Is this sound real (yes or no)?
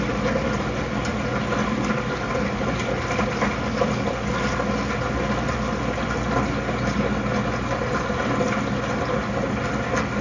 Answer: yes